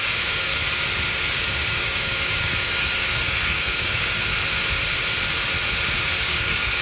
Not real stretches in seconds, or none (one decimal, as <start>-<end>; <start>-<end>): 0.0-0.6; 1.3-4.3; 6.0-6.8